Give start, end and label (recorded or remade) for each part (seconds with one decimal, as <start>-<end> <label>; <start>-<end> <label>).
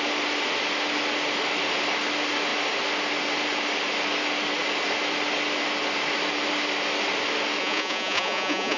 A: 0.0-7.6 recorded; 7.6-8.8 remade